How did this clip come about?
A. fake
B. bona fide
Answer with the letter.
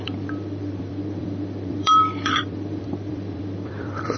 A